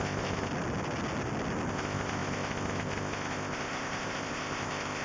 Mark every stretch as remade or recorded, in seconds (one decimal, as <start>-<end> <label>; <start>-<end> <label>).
0.0-0.5 remade; 0.5-1.7 recorded; 1.7-5.0 remade